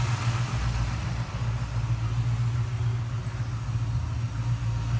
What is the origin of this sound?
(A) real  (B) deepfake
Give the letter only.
A